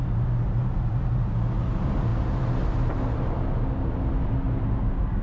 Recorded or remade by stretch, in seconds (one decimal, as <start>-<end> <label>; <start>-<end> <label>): 0.0-5.2 recorded